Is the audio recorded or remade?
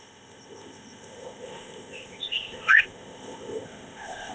remade